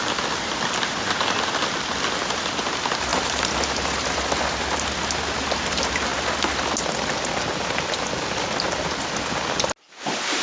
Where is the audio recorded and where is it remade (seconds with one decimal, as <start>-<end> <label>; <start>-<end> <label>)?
0.0-10.4 recorded